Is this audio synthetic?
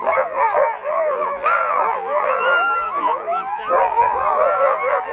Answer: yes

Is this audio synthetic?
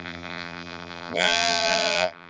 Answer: yes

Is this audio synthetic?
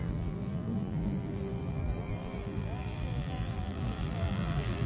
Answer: yes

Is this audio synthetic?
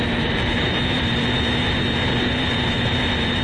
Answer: yes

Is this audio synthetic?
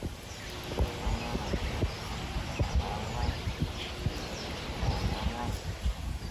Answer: no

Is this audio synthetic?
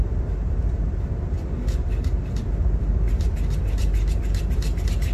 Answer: yes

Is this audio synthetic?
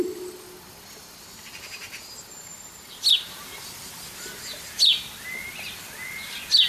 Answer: no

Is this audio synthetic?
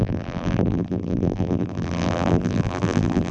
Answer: yes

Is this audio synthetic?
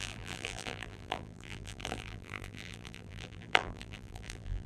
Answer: yes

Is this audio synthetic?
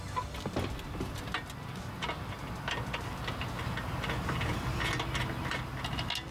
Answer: no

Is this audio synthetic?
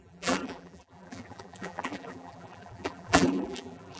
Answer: yes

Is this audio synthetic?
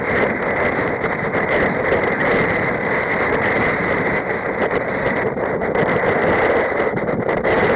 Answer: yes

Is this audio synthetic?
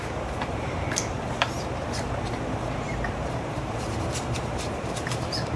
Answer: yes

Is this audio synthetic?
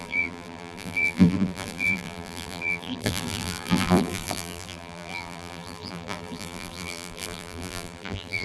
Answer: yes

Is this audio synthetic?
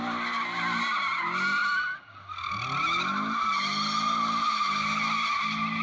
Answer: no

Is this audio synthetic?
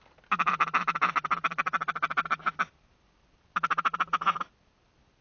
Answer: no